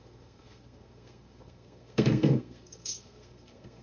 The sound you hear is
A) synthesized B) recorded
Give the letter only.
A